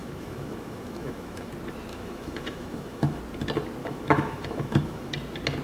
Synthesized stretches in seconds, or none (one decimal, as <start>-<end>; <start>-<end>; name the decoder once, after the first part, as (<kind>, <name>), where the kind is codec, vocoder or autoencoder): 0.0-1.5 (autoencoder, DAC-VAE); 1.9-3.2; 3.8-5.1